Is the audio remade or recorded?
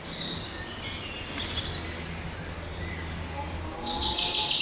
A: recorded